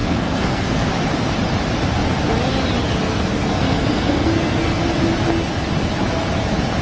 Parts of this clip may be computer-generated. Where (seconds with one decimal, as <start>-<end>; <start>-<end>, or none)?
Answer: 0.0-0.9; 3.1-4.8